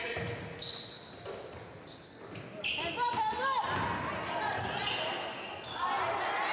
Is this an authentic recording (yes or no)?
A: yes